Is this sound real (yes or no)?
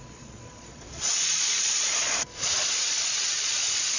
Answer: no